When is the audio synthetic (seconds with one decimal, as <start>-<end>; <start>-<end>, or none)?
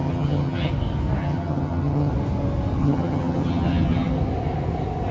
0.0-0.7; 1.2-2.1; 2.8-4.1